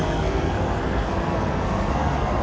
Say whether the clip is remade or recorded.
remade